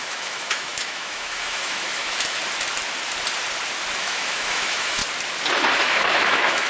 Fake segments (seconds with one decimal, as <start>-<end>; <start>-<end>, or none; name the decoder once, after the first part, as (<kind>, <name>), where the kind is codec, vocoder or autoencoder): 0.0-2.4 (autoencoder, DAC-VAE); 4.0-5.0; 5.7-6.7